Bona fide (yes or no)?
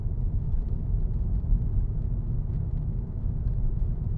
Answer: yes